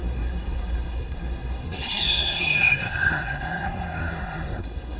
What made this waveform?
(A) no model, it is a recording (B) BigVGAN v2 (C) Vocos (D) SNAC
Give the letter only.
D